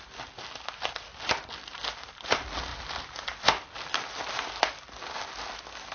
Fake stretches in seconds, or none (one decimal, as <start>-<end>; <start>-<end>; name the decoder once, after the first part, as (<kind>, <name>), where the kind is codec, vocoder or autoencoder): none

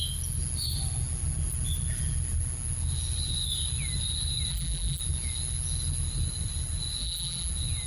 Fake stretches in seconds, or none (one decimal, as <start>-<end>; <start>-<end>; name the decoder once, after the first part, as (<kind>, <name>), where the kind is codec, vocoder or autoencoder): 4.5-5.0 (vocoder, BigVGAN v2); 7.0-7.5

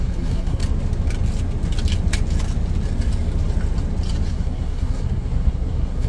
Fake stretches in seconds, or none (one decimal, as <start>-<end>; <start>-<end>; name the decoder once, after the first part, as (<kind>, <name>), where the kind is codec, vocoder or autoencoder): 0.0-0.6 (codec, SNAC); 4.3-6.1

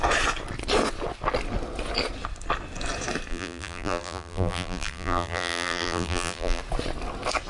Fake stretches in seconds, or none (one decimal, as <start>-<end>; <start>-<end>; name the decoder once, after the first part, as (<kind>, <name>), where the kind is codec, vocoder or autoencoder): 3.3-6.6 (vocoder, BigVGAN v2)

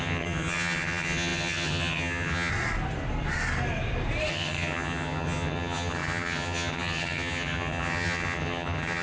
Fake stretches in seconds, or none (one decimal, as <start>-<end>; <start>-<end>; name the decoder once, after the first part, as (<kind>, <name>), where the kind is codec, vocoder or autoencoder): 0.0-2.5 (vocoder, HiFi-GAN); 4.3-9.0